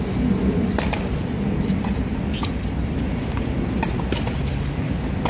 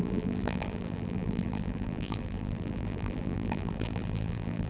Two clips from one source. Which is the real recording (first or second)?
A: first